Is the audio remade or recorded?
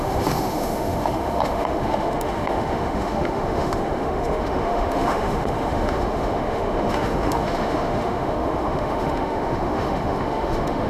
remade